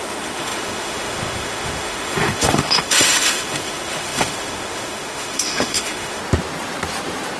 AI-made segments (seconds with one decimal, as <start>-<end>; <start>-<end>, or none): 0.0-6.2